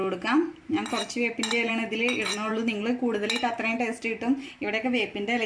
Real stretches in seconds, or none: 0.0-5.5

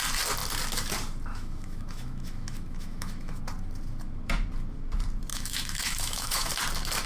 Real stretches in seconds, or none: 0.0-1.3; 3.4-5.3; 6.5-7.1

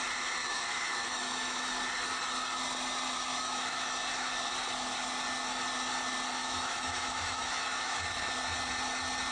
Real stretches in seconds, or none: 0.0-0.4; 1.7-3.3; 3.9-6.4; 8.2-9.3

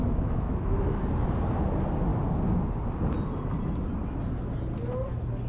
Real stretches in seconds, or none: 1.0-5.5

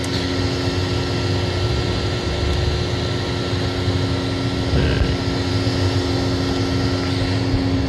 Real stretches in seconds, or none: 0.0-7.9

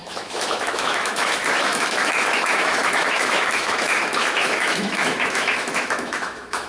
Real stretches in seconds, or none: none